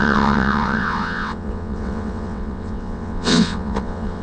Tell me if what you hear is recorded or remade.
remade